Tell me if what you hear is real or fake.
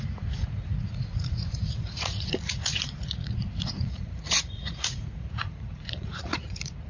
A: fake